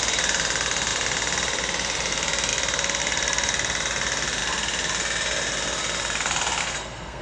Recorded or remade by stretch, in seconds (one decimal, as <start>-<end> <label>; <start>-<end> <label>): 0.0-6.6 recorded; 6.6-7.2 remade